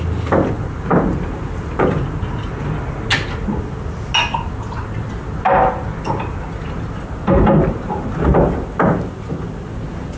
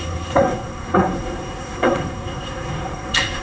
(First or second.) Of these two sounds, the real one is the first